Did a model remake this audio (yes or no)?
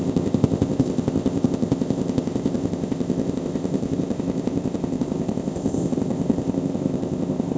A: yes